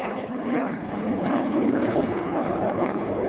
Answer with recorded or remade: remade